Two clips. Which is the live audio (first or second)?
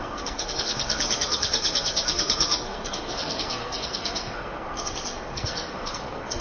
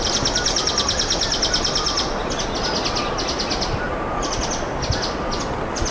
second